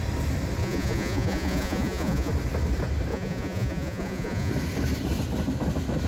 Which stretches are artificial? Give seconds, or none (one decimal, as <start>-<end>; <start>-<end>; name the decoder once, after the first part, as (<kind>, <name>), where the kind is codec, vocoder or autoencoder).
0.6-2.3 (vocoder, Vocos); 3.1-4.5